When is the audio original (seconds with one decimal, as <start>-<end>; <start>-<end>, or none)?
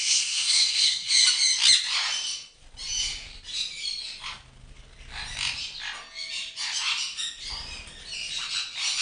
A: 1.1-9.0